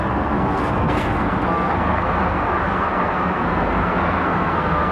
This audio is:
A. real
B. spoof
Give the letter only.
B